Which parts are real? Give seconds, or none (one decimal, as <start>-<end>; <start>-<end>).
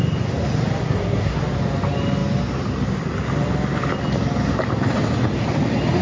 0.0-0.8; 1.4-6.0